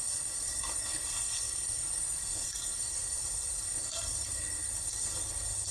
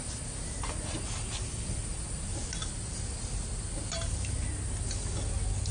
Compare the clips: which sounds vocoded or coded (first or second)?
first